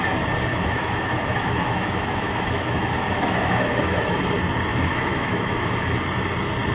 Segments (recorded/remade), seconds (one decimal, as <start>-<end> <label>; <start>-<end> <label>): 0.0-0.5 recorded; 0.5-4.2 remade; 4.2-4.7 recorded; 4.7-5.7 remade; 5.7-6.7 recorded